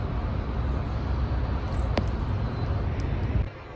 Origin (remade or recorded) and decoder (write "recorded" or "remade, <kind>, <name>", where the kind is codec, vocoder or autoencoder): recorded